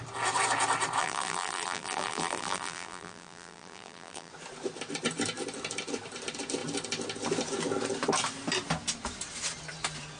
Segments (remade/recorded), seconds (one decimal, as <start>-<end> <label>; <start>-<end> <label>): 0.0-1.0 recorded; 1.0-4.3 remade; 4.3-10.2 recorded